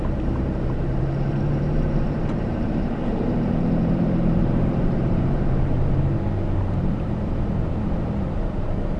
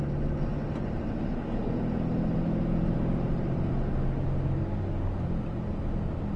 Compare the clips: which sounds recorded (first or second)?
second